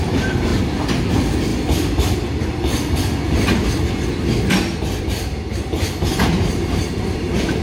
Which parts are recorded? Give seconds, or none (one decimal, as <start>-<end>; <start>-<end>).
0.5-1.1; 1.5-5.0